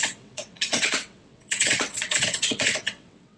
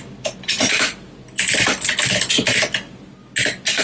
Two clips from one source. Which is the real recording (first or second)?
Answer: second